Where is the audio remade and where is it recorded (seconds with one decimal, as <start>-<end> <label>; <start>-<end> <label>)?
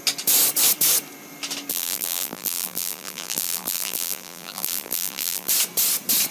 0.0-1.7 recorded; 1.7-5.5 remade; 5.5-6.3 recorded